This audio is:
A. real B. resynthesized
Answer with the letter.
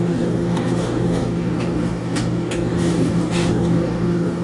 B